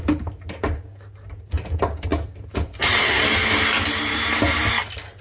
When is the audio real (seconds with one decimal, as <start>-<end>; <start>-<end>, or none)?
0.0-5.2